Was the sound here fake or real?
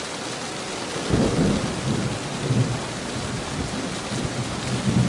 real